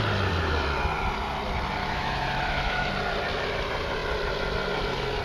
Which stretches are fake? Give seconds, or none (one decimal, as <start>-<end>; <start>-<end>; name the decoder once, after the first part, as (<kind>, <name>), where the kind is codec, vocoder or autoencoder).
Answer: 1.8-2.9 (autoencoder, DAC-VAE)